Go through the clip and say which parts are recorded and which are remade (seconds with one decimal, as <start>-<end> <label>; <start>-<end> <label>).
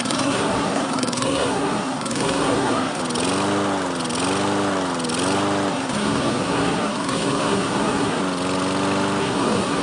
0.0-3.0 remade; 3.0-5.7 recorded; 5.7-8.2 remade; 8.2-9.2 recorded; 9.2-9.8 remade